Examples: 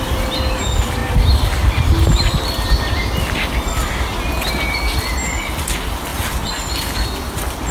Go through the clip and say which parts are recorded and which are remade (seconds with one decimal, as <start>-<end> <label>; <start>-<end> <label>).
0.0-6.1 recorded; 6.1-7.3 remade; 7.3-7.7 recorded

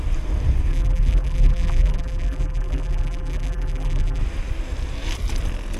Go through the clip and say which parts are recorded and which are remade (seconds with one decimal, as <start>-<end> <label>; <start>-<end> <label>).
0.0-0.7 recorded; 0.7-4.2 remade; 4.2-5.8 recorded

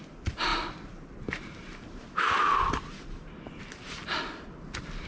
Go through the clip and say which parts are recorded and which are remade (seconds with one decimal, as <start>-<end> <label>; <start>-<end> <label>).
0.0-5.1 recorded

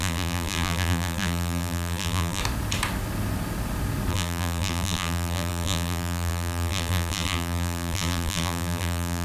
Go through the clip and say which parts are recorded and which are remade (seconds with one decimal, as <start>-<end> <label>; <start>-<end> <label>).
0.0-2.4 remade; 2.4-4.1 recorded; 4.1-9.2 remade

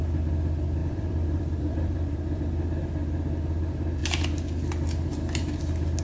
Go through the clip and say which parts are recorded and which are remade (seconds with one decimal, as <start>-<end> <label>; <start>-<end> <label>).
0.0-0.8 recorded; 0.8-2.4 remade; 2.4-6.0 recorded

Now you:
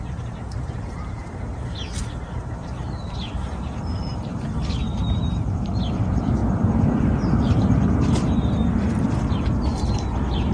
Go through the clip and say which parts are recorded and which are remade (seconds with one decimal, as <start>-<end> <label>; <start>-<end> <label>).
0.0-10.5 remade

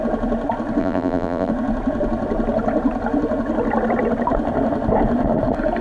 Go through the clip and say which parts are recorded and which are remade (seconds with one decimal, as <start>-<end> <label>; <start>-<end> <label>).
0.0-0.8 recorded; 0.8-1.5 remade; 1.5-5.8 recorded

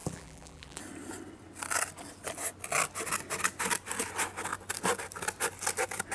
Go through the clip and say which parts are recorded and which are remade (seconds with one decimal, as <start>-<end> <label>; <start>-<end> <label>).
0.0-0.8 remade; 0.8-6.1 recorded